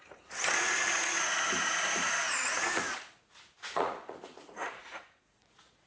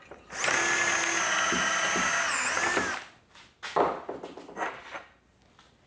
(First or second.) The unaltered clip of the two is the second